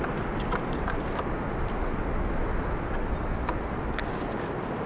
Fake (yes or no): no